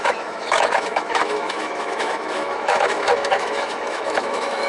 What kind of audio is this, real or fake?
fake